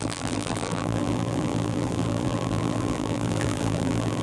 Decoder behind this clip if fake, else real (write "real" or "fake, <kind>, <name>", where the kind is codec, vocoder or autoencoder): fake, vocoder, BigVGAN v2